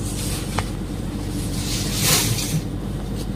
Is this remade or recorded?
recorded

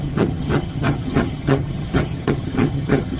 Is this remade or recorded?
remade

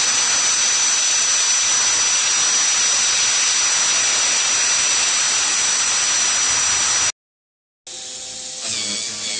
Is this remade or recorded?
recorded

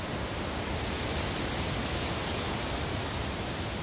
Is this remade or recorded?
recorded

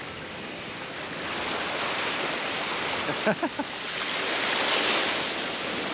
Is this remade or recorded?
recorded